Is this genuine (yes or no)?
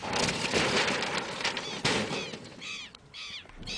no